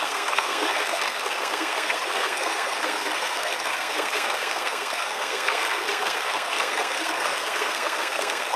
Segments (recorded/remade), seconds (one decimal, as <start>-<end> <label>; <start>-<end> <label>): 0.0-8.6 remade